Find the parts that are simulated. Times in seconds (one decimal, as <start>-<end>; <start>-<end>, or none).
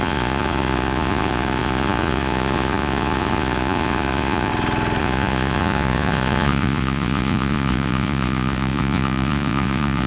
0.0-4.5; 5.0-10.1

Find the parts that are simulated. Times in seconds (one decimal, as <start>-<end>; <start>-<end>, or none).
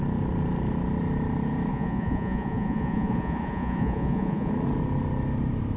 1.7-4.5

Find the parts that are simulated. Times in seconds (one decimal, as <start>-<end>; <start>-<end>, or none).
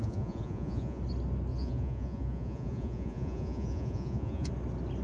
0.0-1.0; 1.5-4.5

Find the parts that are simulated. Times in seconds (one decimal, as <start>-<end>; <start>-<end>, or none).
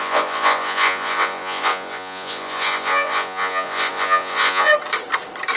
0.0-4.7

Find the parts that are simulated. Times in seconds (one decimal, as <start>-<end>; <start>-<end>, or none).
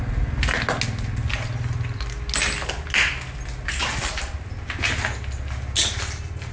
none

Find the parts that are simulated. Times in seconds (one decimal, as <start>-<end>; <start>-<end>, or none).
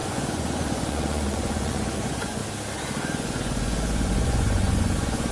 0.0-2.4; 3.0-5.3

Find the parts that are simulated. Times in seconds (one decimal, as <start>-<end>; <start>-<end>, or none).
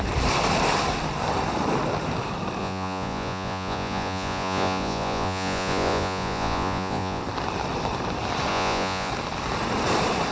2.6-7.2; 8.5-9.1